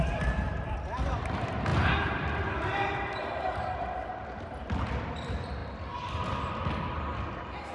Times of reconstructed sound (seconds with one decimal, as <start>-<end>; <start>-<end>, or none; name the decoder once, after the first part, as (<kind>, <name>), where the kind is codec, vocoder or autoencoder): 0.0-1.7 (vocoder, BigVGAN v2); 4.1-7.7